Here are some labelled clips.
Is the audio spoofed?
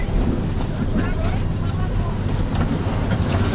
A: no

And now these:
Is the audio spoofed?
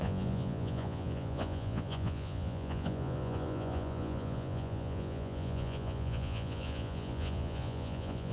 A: yes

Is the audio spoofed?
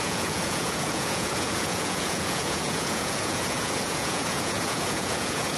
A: yes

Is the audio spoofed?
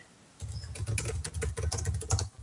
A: no